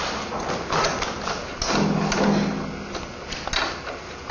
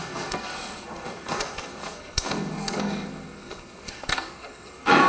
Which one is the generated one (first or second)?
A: second